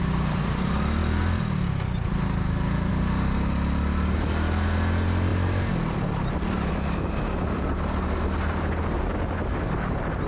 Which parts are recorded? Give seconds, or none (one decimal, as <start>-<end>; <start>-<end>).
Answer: 0.0-10.3